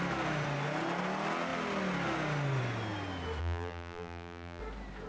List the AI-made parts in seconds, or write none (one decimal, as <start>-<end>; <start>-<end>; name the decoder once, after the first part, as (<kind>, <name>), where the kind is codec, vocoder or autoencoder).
3.4-4.6 (vocoder, BigVGAN v2)